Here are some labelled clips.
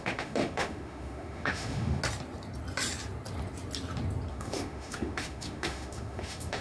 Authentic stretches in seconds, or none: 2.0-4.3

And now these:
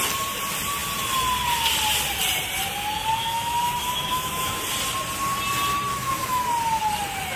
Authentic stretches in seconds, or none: 0.0-3.2; 4.6-5.9; 6.5-7.4